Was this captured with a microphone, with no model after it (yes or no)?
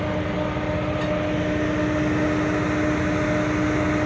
yes